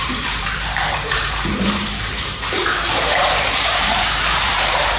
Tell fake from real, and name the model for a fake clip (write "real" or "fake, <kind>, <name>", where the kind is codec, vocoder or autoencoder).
fake, vocoder, BigVGAN v2